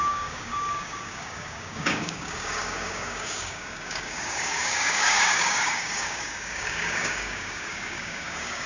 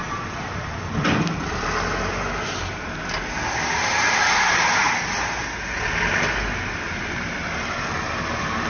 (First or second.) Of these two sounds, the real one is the second